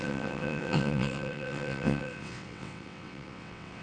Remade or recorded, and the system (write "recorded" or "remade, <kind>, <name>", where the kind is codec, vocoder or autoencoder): remade, vocoder, WaveNeXt